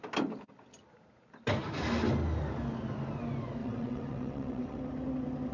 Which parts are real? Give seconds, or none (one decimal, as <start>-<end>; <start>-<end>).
0.0-3.6; 4.8-5.5